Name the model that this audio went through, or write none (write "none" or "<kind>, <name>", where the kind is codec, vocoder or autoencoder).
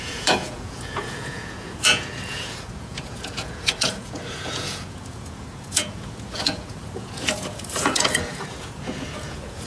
vocoder, Vocos